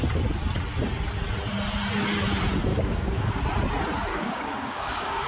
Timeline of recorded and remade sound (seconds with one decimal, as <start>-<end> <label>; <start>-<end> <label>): 0.0-2.7 recorded; 2.7-3.4 remade; 3.4-4.1 recorded; 4.1-5.3 remade